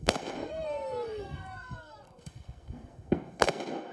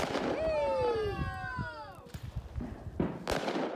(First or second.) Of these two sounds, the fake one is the first